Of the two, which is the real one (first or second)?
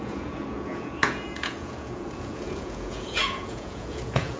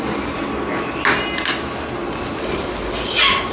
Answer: second